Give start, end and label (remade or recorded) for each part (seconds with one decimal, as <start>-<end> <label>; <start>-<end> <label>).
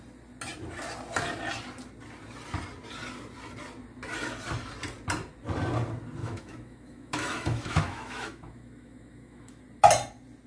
0.0-6.2 recorded; 6.2-9.6 remade; 9.6-10.5 recorded